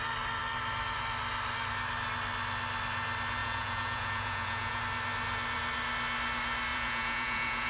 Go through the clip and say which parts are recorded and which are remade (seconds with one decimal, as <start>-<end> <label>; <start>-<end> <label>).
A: 0.0-3.4 recorded; 3.4-4.8 remade; 4.8-6.7 recorded; 6.7-7.7 remade